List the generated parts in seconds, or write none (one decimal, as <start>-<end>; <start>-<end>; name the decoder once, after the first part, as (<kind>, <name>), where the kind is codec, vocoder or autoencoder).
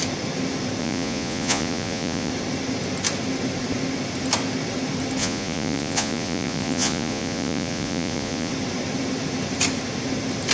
0.8-2.3 (vocoder, Vocos); 5.2-8.5